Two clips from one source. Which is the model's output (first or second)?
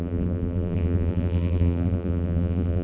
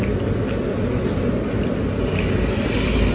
first